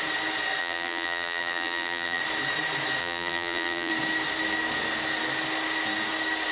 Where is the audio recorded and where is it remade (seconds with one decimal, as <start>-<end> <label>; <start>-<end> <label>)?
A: 0.0-0.6 recorded; 0.6-2.2 remade; 2.2-3.0 recorded; 3.0-3.9 remade; 3.9-6.5 recorded